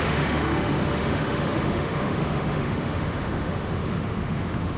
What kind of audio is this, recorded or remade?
remade